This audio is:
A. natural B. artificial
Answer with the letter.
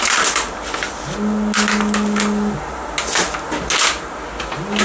A